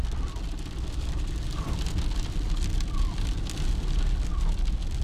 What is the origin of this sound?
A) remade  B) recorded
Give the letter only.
B